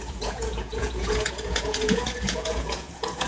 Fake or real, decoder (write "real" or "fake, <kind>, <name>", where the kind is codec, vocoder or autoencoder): fake, vocoder, Vocos